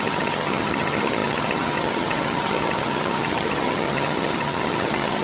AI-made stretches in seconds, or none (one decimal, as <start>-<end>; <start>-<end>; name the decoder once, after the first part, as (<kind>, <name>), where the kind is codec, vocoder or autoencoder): 0.0-5.2 (vocoder, HiFi-GAN)